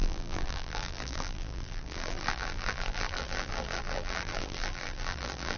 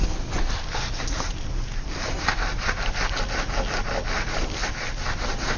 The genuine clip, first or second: second